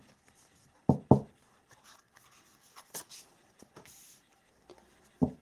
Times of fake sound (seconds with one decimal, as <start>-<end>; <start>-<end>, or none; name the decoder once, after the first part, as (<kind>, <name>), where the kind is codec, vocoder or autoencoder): none

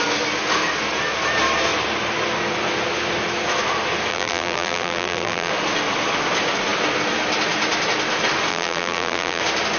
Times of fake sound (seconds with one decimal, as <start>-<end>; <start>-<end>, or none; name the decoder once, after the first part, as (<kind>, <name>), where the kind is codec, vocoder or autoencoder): 4.1-5.5 (vocoder, BigVGAN v2); 8.5-9.4